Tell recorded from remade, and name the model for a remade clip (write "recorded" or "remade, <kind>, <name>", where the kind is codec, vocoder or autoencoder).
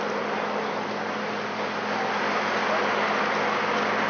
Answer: recorded